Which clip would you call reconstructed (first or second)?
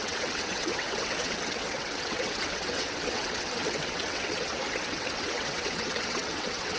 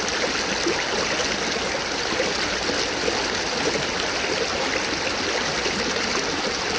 first